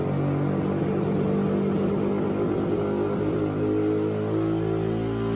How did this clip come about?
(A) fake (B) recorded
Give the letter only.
B